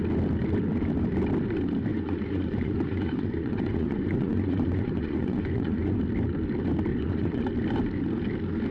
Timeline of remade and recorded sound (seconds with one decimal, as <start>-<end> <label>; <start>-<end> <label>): 0.0-1.9 recorded; 1.9-6.0 remade; 6.0-6.9 recorded; 6.9-7.5 remade; 7.5-8.7 recorded